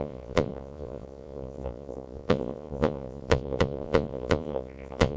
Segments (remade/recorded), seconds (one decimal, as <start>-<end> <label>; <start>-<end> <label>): 0.0-5.2 remade